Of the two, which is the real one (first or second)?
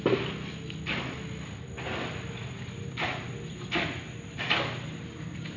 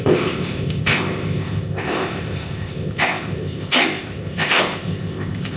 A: first